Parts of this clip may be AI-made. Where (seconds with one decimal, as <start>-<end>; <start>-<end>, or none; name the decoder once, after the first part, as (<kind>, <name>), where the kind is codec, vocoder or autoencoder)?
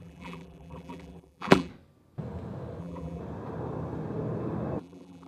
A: 0.0-1.7 (vocoder, BigVGAN v2); 2.8-3.2; 4.8-5.3